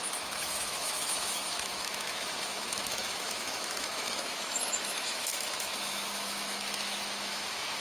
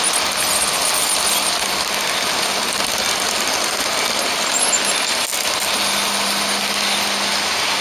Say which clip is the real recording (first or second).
second